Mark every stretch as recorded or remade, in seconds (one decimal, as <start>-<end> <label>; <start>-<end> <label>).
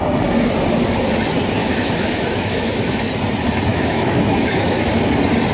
0.0-1.6 recorded; 1.6-3.1 remade; 3.1-3.7 recorded; 3.7-4.9 remade; 4.9-5.5 recorded